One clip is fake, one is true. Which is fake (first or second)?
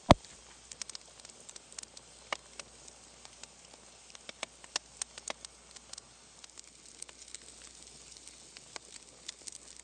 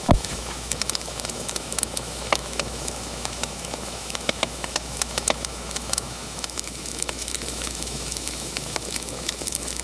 second